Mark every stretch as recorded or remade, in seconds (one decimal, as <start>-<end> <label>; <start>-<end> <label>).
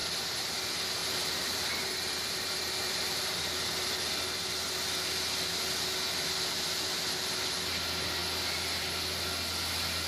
0.0-0.5 remade; 0.5-1.0 recorded; 1.0-4.0 remade; 4.0-10.1 recorded